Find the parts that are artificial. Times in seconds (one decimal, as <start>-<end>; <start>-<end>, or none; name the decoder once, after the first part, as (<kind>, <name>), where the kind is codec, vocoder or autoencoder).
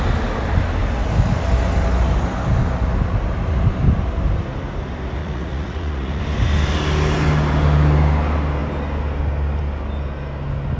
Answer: 5.2-6.2 (vocoder, Vocos)